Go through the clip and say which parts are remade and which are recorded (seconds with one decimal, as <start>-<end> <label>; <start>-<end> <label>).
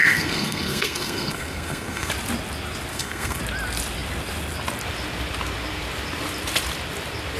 0.0-2.1 remade; 2.1-2.9 recorded; 2.9-3.4 remade; 3.4-7.4 recorded